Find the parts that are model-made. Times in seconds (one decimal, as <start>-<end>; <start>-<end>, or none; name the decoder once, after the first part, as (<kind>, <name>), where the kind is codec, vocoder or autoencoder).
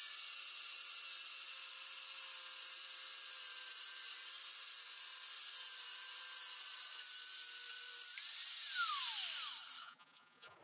9.8-10.6 (vocoder, Vocos)